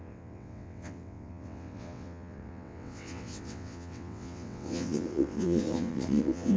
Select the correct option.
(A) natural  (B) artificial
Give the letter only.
B